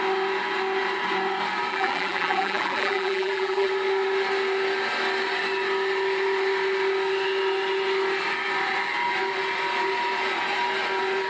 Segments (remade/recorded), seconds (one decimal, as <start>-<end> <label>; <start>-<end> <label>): 0.0-1.7 recorded; 1.7-3.7 remade; 3.7-11.3 recorded